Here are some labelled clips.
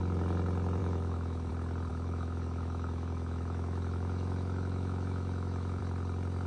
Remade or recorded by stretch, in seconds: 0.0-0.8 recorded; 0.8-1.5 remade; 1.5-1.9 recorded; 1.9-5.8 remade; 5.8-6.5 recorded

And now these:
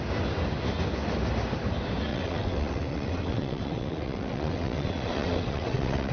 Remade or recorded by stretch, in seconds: 0.0-2.1 recorded; 2.1-6.1 remade

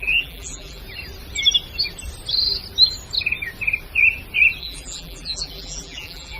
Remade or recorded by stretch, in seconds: 0.0-0.8 remade; 0.8-4.6 recorded; 4.6-6.4 remade

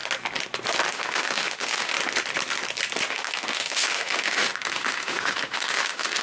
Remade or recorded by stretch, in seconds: 0.0-0.9 recorded; 0.9-1.9 remade; 1.9-3.1 recorded; 3.1-6.2 remade

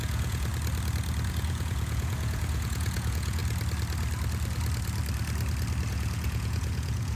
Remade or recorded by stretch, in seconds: 0.0-0.5 remade; 0.5-1.3 recorded; 1.3-3.4 remade; 3.4-5.9 recorded; 5.9-7.2 remade

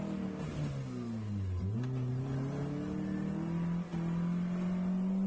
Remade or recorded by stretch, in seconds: 0.0-5.3 recorded